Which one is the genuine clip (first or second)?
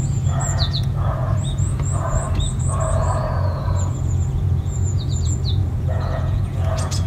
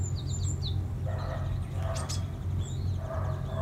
second